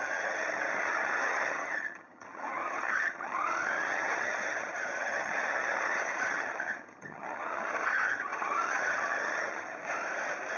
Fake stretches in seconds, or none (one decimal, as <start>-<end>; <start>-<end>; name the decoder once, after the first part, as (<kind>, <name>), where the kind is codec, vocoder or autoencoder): 0.0-9.8 (vocoder, HiFi-GAN)